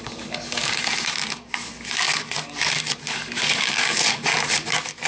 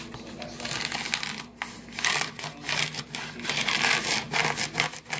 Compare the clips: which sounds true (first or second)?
second